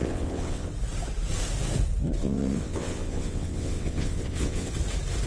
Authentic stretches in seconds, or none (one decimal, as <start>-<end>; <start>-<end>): 0.7-2.2; 4.7-5.3